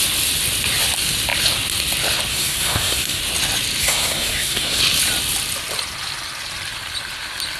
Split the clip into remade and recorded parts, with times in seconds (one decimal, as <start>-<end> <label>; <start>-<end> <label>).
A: 0.0-2.3 recorded; 2.3-3.2 remade; 3.2-3.8 recorded; 3.8-4.8 remade; 4.8-7.6 recorded